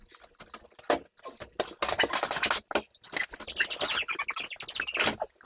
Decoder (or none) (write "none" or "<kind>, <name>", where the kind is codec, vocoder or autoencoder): none